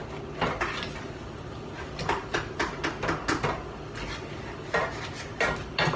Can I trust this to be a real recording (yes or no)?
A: yes